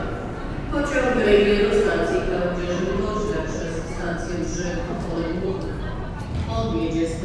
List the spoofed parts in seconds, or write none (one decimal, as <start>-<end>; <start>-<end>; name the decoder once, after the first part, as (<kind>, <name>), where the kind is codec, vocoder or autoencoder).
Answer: 4.5-6.2 (vocoder, BigVGAN v2)